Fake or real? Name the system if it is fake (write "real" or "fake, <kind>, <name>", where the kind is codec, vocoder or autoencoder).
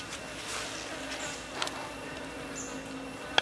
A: real